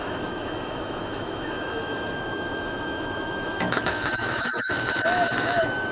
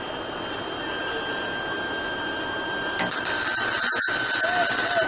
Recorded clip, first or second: second